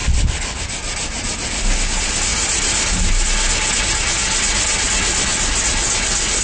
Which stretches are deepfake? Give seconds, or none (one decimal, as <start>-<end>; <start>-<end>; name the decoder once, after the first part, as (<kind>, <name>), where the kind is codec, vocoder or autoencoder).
0.0-0.6 (codec, HILCodec)